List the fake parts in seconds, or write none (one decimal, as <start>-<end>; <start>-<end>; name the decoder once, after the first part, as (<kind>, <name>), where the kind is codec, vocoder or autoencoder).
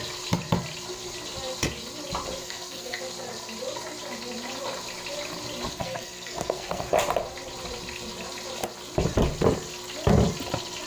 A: 2.4-3.0 (codec, SNAC); 5.7-6.9